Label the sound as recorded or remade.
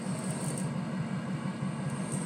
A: recorded